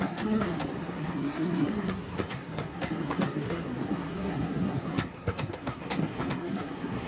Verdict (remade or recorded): remade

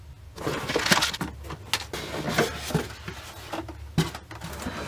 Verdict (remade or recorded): recorded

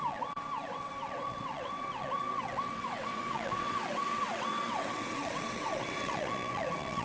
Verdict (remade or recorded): remade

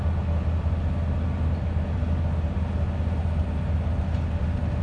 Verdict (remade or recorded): recorded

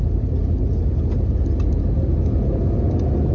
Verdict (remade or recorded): recorded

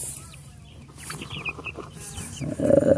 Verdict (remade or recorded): remade